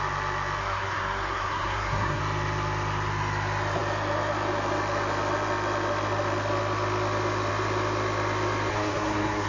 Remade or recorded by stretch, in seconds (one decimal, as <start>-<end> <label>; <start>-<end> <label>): 0.0-0.6 recorded; 0.6-2.2 remade; 2.2-8.7 recorded; 8.7-9.5 remade